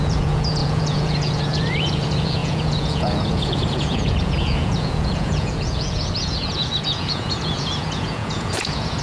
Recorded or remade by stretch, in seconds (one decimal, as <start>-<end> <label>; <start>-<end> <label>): 0.0-9.0 remade